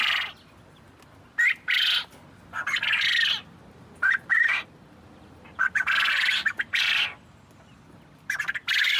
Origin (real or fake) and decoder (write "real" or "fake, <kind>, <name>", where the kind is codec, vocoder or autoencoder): real